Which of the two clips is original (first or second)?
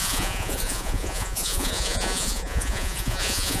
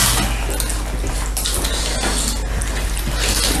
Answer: second